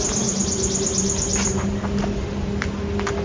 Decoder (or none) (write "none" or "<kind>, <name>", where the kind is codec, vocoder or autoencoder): none